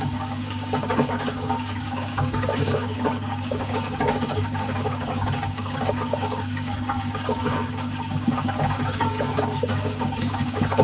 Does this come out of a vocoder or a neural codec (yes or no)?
yes